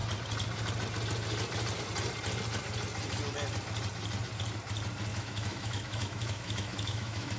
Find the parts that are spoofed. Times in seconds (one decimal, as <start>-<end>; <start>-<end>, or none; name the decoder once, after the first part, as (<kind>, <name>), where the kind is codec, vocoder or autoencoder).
5.1-7.4 (autoencoder, DAC-VAE)